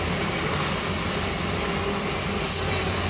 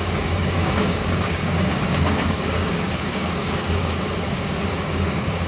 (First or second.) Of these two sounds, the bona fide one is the first